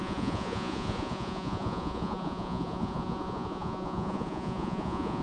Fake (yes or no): yes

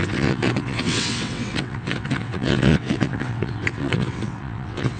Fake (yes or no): yes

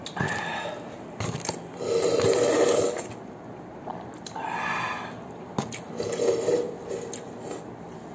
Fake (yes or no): no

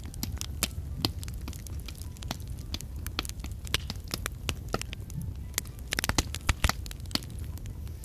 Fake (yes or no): no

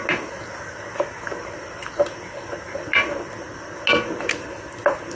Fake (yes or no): no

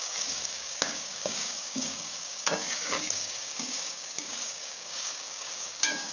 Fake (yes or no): yes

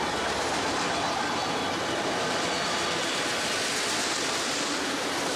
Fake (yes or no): no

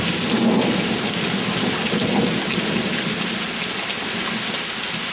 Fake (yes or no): no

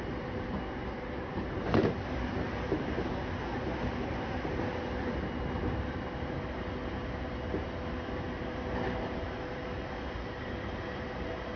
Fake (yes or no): no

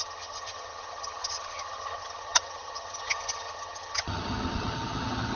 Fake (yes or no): yes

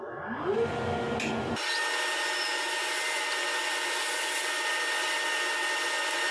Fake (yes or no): no